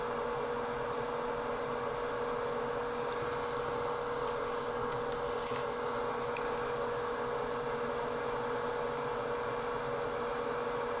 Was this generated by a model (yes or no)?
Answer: no